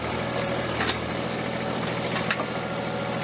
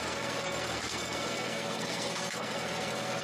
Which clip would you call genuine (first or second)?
first